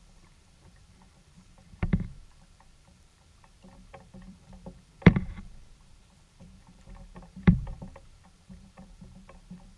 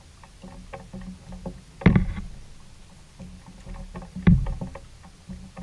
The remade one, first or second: first